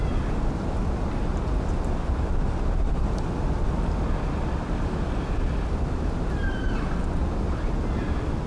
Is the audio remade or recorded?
recorded